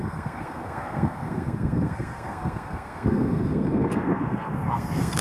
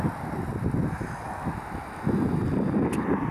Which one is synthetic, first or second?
first